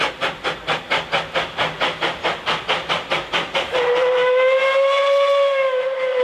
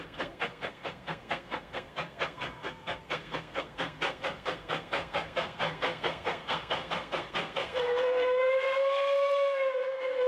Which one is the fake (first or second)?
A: second